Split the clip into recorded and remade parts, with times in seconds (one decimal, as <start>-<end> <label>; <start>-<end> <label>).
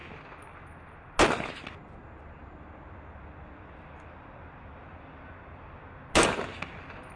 0.0-7.2 recorded